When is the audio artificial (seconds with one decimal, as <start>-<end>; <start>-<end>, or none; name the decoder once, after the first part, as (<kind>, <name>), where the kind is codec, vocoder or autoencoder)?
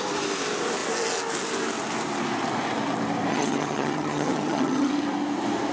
3.3-4.9 (vocoder, HiFi-GAN)